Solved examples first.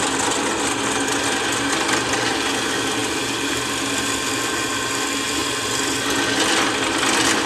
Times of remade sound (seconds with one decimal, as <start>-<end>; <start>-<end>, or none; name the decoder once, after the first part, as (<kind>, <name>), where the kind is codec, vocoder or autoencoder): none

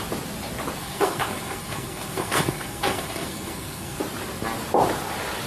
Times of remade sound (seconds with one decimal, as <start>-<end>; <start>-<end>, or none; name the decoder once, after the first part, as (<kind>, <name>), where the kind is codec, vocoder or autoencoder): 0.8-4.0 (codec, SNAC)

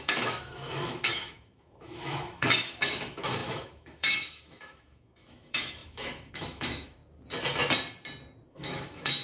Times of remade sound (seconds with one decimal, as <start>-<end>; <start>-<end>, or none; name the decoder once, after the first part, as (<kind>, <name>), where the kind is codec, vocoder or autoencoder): 0.0-7.0 (autoencoder, DAC-VAE); 8.5-9.2